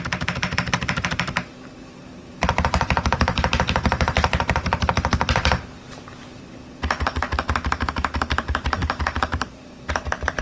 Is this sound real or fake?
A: fake